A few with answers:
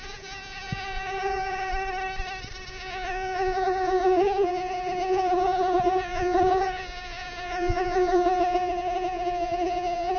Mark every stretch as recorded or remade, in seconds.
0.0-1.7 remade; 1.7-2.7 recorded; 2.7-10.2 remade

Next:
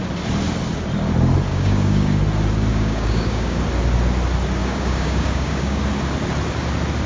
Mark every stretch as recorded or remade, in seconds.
0.0-1.5 recorded; 1.5-2.2 remade; 2.2-2.7 recorded; 2.7-3.6 remade; 3.6-4.6 recorded; 4.6-5.8 remade; 5.8-7.1 recorded

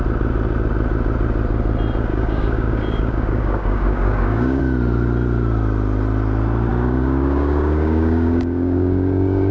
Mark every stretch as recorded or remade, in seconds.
0.0-2.1 recorded; 2.1-4.6 remade; 4.6-6.7 recorded; 6.7-9.5 remade

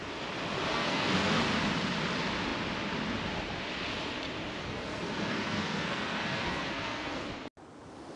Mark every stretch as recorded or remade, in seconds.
0.0-0.7 recorded; 0.7-1.4 remade; 1.4-4.6 recorded; 4.6-7.3 remade; 7.3-8.2 recorded

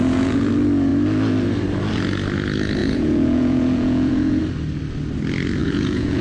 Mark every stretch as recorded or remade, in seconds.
0.0-0.5 remade; 0.5-2.8 recorded; 2.8-4.4 remade; 4.4-5.6 recorded; 5.6-6.2 remade

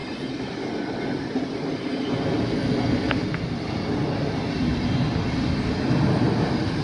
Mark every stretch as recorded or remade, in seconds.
0.0-6.8 recorded